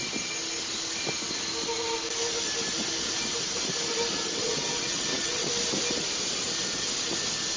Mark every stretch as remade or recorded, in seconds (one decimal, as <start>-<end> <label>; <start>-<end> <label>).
0.0-4.4 recorded; 4.4-5.5 remade; 5.5-7.6 recorded